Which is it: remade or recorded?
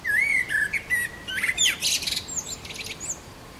recorded